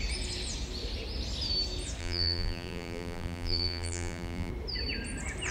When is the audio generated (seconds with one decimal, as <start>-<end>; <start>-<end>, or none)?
2.0-4.5